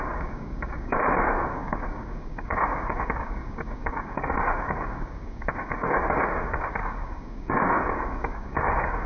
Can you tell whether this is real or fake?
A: fake